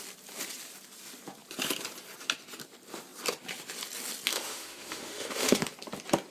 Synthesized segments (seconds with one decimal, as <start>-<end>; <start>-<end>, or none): 4.3-5.6